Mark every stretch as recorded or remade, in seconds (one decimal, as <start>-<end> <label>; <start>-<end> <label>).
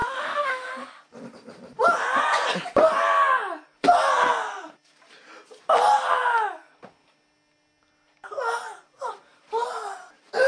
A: 0.0-0.7 remade; 0.7-10.5 recorded